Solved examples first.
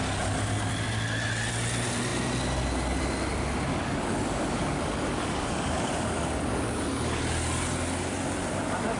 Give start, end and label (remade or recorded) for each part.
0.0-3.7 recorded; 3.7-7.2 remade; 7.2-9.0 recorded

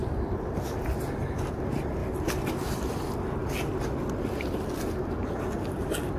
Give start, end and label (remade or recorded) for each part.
0.0-6.2 recorded